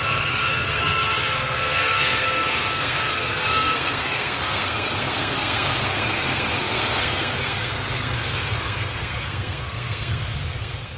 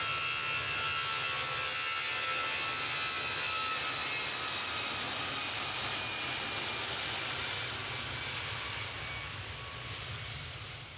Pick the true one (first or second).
second